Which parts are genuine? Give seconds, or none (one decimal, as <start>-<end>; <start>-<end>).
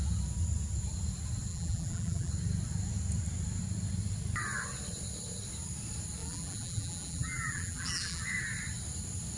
0.0-1.5; 2.3-6.2; 8.2-9.4